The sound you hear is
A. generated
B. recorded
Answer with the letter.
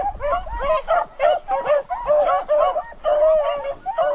B